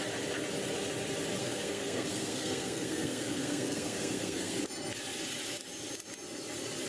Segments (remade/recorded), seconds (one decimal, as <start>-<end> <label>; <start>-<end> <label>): 0.0-1.4 recorded; 1.4-4.6 remade; 4.6-6.9 recorded